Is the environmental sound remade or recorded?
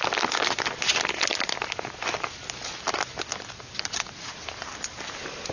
recorded